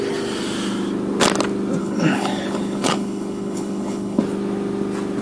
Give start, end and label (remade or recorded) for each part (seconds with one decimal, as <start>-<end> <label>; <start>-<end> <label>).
0.0-1.8 recorded; 1.8-4.2 remade; 4.2-5.2 recorded